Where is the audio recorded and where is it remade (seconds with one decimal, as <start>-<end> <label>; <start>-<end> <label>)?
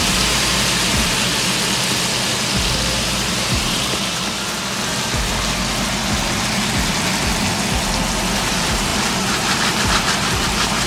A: 0.0-1.3 remade; 1.3-3.0 recorded; 3.0-4.0 remade; 4.0-8.5 recorded; 8.5-10.9 remade